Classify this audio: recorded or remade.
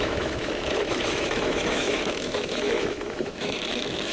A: remade